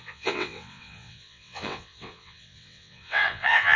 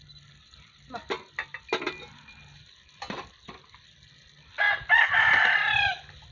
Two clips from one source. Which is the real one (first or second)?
second